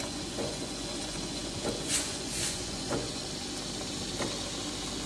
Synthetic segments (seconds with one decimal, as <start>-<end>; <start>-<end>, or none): 0.0-3.2